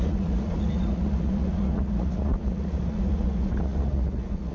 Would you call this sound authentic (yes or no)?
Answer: no